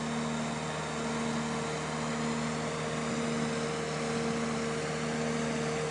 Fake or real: real